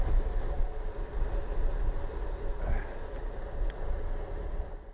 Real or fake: real